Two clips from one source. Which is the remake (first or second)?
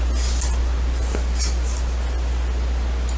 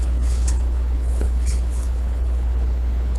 second